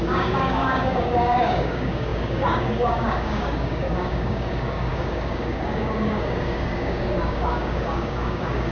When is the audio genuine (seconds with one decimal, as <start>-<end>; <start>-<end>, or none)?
none